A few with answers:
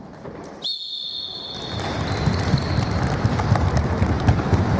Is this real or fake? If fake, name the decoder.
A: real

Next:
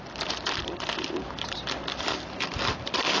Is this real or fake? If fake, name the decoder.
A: fake, vocoder, BigVGAN v2